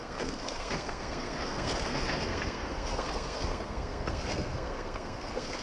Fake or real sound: fake